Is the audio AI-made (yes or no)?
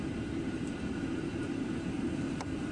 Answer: yes